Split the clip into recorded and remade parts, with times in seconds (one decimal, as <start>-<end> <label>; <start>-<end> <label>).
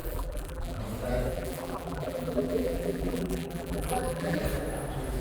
0.0-0.8 remade; 0.8-1.3 recorded; 1.3-4.4 remade; 4.4-5.2 recorded